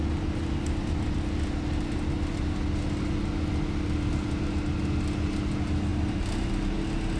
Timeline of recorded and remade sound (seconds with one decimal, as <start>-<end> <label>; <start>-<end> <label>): 0.0-5.9 recorded; 5.9-6.5 remade; 6.5-7.2 recorded